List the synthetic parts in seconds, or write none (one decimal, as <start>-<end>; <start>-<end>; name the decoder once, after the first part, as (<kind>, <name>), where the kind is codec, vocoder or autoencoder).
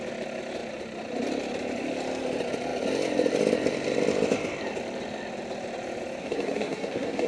6.2-7.3 (codec, SNAC)